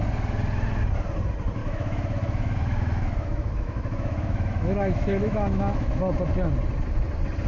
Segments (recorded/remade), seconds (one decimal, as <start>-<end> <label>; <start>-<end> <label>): 0.0-1.6 recorded; 1.6-6.0 remade; 6.0-7.5 recorded